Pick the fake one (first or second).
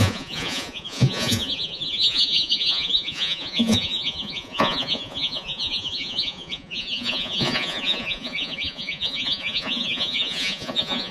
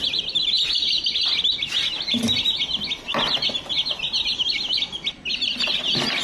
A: first